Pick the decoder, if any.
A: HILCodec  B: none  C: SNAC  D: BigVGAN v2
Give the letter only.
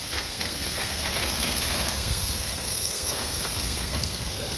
C